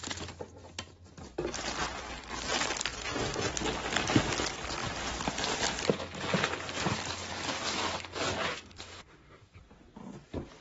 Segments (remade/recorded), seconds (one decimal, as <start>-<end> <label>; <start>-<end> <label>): 0.0-3.0 recorded; 3.0-3.5 remade; 3.5-8.5 recorded; 8.5-9.5 remade; 9.5-10.6 recorded